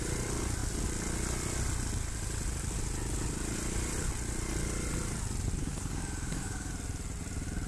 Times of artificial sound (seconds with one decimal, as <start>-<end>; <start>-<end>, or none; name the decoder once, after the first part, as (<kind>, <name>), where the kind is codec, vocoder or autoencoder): 5.6-6.7 (codec, DAC)